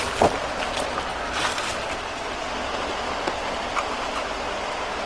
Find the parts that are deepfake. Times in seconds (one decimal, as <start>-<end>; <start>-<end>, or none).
none